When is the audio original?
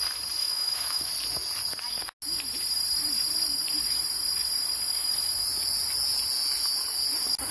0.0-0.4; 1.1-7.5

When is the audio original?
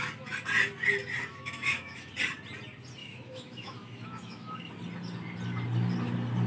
0.0-1.3; 2.1-3.0; 4.7-6.5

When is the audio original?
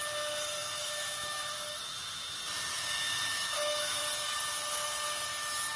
0.0-0.6; 1.8-2.7; 4.0-5.8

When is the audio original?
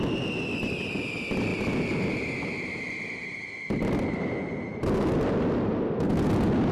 0.0-6.7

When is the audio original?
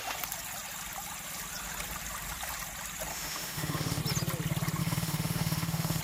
0.0-3.1; 4.0-4.8